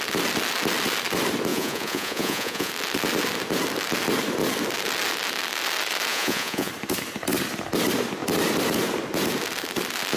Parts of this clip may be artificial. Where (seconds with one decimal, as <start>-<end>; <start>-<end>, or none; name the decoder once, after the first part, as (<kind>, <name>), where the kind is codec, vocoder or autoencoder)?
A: 1.5-2.7 (vocoder, Vocos); 6.1-6.7